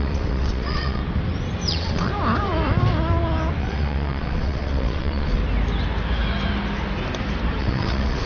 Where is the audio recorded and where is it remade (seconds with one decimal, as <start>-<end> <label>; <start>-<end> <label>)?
0.0-1.0 remade; 1.0-1.7 recorded; 1.7-2.1 remade; 2.1-3.6 recorded; 3.6-5.4 remade; 5.4-7.6 recorded; 7.6-8.3 remade